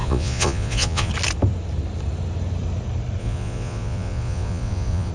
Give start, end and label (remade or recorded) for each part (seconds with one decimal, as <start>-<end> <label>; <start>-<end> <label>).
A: 0.0-1.1 remade; 1.1-3.2 recorded; 3.2-5.1 remade